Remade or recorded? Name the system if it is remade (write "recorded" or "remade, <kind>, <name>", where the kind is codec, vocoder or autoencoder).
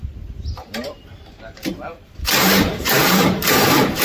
remade, vocoder, BigVGAN v2